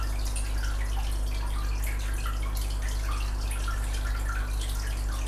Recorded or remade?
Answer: recorded